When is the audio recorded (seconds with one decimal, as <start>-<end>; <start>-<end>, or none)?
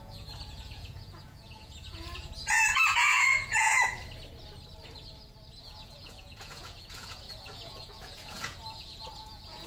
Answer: 3.7-5.6